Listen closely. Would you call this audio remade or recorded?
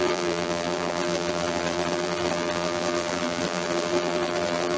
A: remade